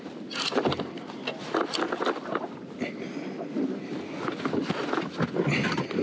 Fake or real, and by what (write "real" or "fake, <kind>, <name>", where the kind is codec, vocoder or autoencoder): real